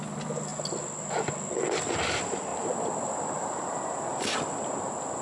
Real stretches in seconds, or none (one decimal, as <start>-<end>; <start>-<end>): 0.0-5.2